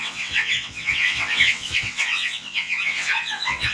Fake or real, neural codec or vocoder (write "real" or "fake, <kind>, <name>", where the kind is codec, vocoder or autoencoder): fake, vocoder, WaveNeXt